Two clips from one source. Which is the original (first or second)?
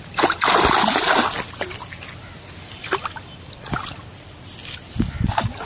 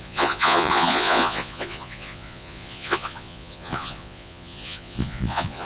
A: first